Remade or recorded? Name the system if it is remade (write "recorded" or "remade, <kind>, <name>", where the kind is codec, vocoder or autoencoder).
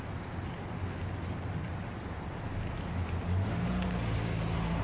recorded